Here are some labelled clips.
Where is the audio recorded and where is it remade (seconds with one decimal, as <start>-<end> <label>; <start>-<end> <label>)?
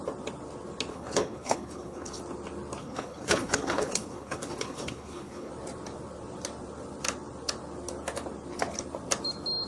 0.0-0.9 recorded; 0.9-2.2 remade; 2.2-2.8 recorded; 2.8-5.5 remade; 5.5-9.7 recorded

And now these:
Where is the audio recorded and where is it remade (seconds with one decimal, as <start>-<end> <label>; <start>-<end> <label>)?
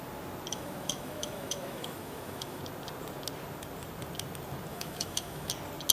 0.0-0.5 recorded; 0.5-2.6 remade; 2.6-4.7 recorded; 4.7-5.5 remade; 5.5-5.9 recorded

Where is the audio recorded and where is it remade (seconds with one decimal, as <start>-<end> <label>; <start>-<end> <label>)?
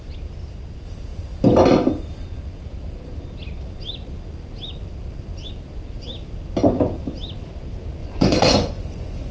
0.0-8.0 recorded; 8.0-9.3 remade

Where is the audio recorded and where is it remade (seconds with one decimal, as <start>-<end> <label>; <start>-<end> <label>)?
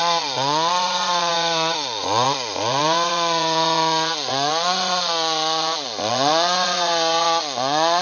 0.0-8.0 remade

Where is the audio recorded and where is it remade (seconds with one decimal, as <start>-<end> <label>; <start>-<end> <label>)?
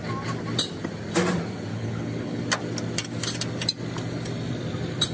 0.0-1.7 recorded; 1.7-2.4 remade; 2.4-5.1 recorded